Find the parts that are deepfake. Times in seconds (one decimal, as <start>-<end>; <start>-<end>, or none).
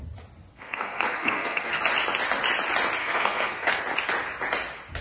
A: 0.5-1.8; 3.0-3.8